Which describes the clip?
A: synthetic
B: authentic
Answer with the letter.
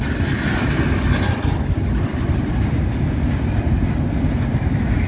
B